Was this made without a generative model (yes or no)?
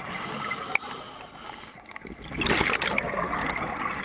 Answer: yes